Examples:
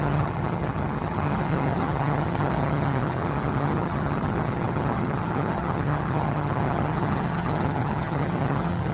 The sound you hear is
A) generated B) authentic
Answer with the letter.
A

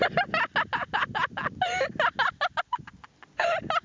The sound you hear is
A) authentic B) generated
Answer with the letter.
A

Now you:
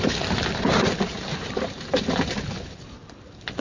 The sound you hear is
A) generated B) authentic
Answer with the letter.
A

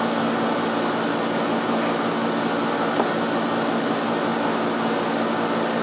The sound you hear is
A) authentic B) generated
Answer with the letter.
A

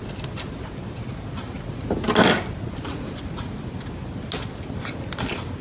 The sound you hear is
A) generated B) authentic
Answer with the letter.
B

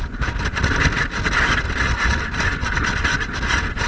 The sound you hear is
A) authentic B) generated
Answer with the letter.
A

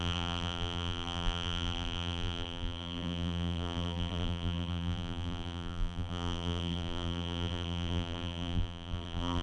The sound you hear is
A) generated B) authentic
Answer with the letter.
A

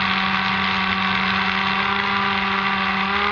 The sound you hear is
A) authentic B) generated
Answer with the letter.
A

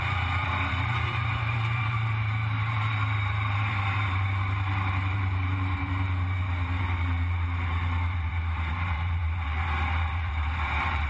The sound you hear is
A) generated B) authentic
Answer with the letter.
A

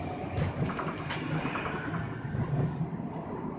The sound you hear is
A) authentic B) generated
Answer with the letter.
A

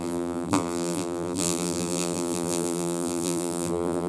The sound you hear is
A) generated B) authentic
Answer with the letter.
A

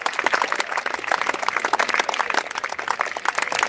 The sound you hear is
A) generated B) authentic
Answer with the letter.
B